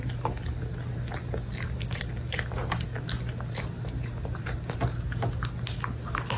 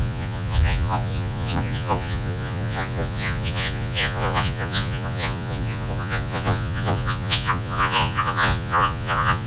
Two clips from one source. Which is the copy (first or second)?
second